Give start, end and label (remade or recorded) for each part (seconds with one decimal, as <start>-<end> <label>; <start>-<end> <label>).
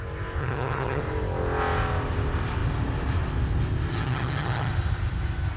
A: 0.0-0.4 recorded; 0.4-1.0 remade; 1.0-3.9 recorded; 3.9-4.7 remade; 4.7-5.6 recorded